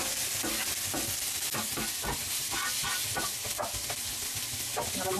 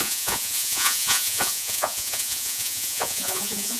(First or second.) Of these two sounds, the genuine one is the first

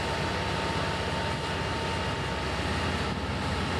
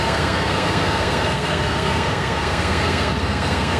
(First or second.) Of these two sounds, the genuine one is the first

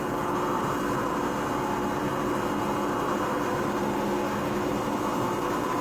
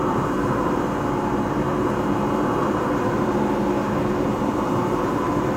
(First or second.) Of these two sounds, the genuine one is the first